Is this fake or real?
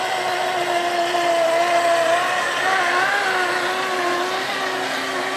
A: real